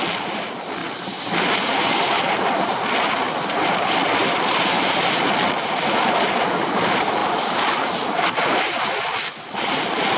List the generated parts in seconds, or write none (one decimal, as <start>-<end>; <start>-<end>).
0.8-2.2; 4.2-4.8